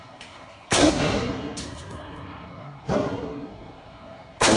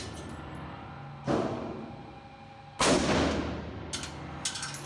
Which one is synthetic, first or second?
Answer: first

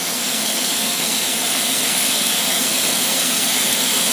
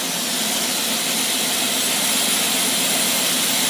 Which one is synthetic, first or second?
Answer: first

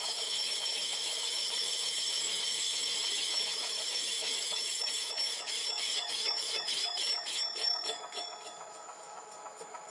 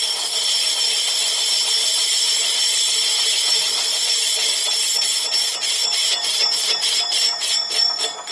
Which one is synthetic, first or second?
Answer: first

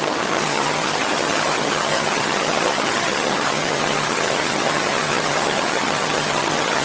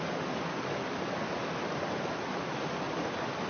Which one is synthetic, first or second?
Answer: first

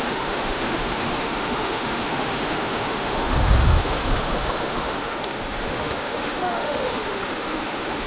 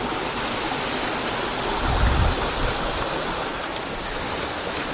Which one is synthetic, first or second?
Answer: first